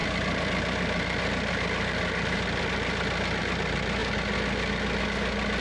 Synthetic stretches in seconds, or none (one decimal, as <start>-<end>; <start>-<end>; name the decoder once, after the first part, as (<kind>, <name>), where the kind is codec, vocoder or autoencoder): none